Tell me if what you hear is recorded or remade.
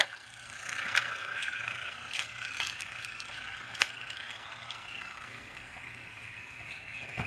remade